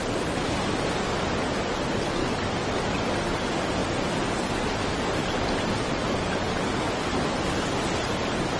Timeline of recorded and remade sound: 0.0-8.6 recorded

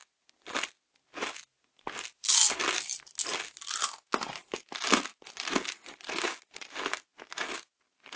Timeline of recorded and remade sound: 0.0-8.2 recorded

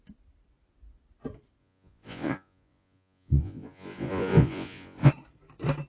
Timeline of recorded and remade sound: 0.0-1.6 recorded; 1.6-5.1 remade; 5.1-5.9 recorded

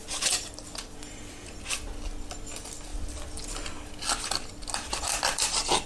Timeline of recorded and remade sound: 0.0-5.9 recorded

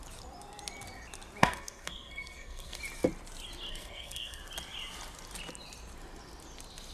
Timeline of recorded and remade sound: 0.0-1.4 recorded; 1.4-2.8 remade; 2.8-3.7 recorded; 3.7-4.4 remade; 4.4-6.9 recorded

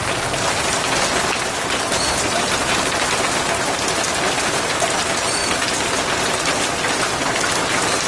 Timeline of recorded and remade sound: 0.0-8.1 recorded

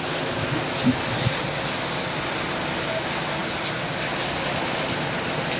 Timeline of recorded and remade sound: 0.0-5.6 recorded

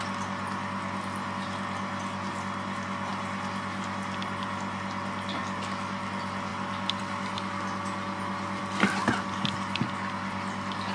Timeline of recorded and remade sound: 0.0-10.9 recorded